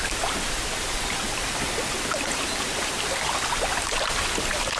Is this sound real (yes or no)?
yes